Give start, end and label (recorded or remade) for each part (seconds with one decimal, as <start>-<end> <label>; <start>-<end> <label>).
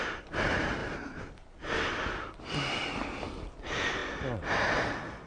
0.0-5.3 recorded